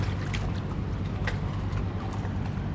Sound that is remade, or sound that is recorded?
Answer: recorded